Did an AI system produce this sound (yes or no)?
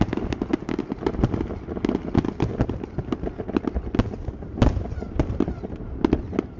no